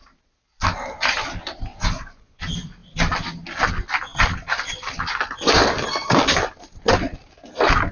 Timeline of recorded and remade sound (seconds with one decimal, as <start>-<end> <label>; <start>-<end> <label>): 0.0-1.7 recorded; 1.7-2.4 remade; 2.4-7.9 recorded